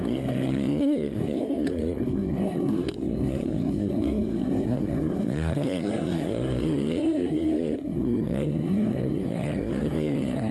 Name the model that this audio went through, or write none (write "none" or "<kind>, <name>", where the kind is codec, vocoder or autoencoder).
codec, SNAC